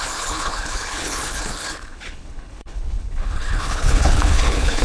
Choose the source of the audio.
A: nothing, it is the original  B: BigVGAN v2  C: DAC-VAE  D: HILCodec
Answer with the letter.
D